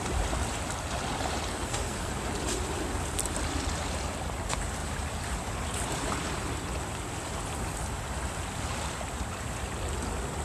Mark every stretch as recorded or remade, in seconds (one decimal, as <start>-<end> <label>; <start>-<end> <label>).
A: 0.0-1.5 recorded; 1.5-2.1 remade; 2.1-10.4 recorded